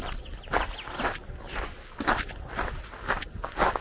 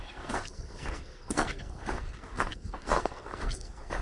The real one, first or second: first